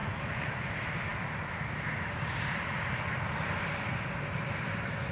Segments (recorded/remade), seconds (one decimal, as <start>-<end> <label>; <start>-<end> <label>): 0.0-0.7 remade; 0.7-5.1 recorded